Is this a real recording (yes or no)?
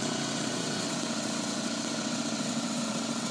no